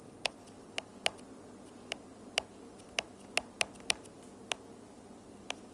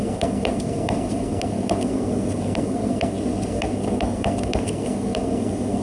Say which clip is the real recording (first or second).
first